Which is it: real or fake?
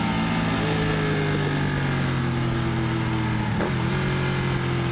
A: real